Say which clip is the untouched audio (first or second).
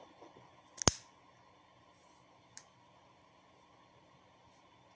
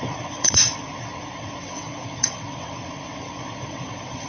first